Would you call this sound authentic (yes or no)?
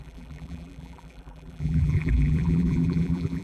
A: no